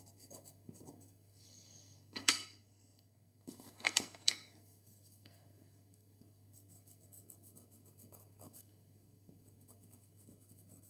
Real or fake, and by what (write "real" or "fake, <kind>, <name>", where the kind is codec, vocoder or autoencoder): fake, codec, SNAC